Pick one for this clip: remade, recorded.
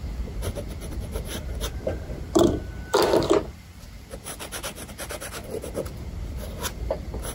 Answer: remade